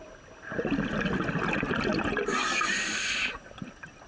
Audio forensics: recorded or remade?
recorded